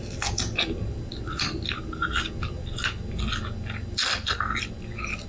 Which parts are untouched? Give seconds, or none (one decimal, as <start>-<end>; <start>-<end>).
0.0-4.1; 4.6-5.3